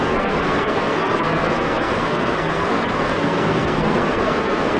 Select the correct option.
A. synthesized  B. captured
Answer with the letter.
A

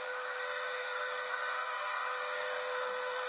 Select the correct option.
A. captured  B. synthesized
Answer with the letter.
B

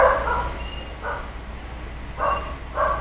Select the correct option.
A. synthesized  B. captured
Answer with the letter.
B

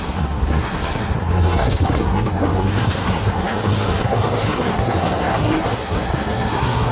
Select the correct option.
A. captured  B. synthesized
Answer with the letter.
B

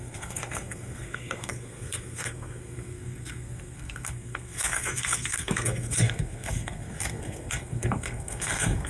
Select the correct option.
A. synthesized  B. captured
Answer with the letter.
A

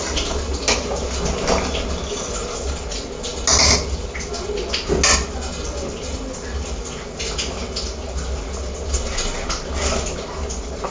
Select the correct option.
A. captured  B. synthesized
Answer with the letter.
A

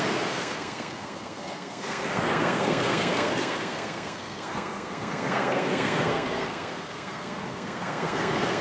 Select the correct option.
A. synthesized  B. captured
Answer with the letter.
A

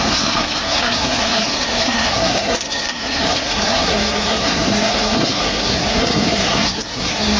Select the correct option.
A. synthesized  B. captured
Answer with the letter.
A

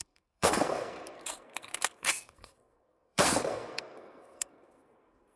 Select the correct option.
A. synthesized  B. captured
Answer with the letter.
A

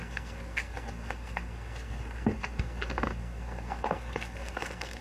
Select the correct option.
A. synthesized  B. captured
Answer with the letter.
A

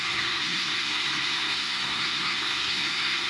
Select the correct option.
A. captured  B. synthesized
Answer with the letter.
B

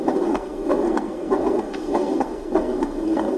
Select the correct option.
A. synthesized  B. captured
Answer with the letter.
A